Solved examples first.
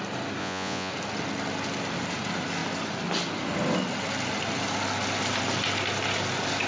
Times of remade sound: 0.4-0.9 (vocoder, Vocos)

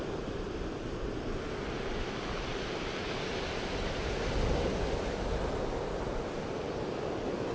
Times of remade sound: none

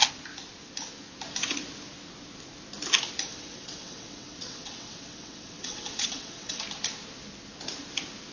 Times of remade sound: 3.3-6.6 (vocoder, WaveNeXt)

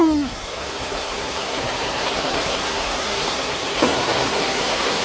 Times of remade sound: 0.0-5.0 (codec, SNAC)

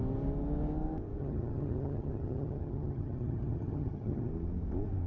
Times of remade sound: 1.2-4.3 (vocoder, HiFi-GAN)

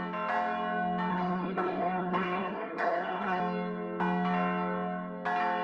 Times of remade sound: 1.1-3.4 (codec, SNAC)

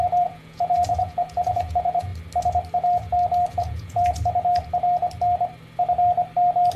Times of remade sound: 0.0-2.1 (vocoder, Vocos); 3.5-4.0

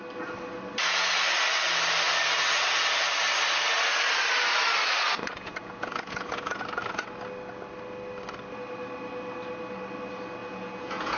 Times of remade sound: 5.2-6.6 (vocoder, Vocos); 10.4-11.2